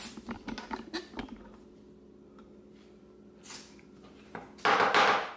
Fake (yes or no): no